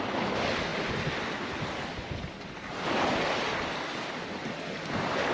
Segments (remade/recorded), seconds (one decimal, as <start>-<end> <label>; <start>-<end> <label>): 0.0-5.3 recorded